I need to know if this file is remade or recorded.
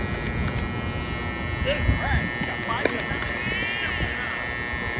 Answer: recorded